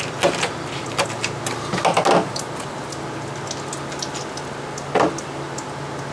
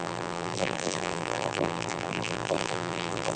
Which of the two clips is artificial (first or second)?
second